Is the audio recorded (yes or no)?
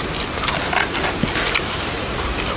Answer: yes